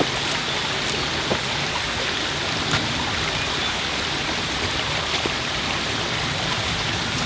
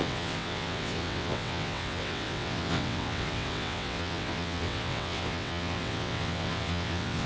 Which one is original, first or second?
first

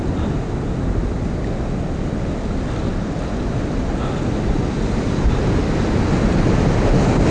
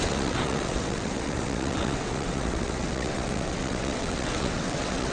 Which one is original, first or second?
first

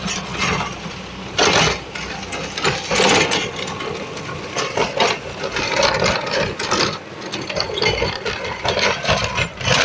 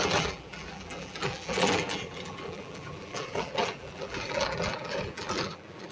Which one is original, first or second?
first